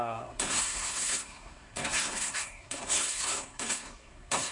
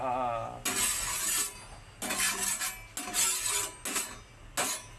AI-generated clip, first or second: first